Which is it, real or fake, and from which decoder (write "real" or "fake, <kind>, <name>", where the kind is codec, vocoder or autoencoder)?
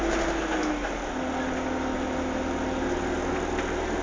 real